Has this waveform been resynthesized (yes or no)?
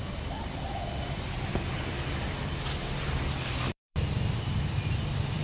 yes